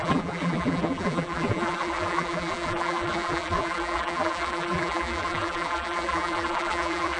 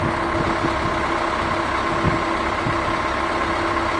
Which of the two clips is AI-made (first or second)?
first